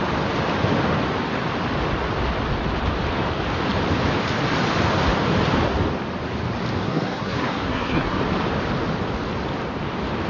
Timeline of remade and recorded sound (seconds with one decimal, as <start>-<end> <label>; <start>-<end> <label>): 0.0-6.8 recorded; 6.8-8.2 remade; 8.2-10.3 recorded